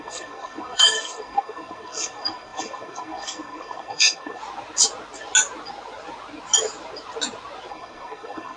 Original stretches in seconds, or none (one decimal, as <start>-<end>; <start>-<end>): 4.4-7.7